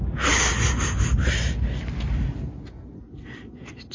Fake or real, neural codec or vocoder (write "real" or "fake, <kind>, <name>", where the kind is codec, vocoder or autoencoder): real